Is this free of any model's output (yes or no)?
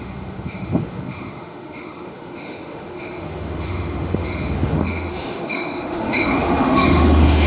no